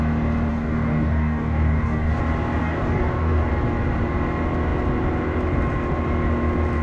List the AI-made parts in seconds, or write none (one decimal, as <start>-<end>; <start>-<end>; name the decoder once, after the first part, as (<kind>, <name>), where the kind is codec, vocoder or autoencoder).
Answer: 0.5-2.2 (codec, DAC); 2.6-3.5